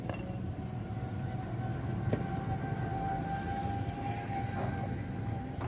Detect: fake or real real